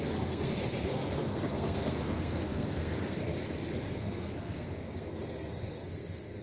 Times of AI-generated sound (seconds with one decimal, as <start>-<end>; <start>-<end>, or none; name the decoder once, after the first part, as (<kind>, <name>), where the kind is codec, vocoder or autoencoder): 0.0-3.3 (codec, SNAC); 3.9-6.4